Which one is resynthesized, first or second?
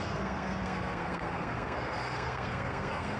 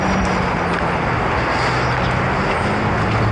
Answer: first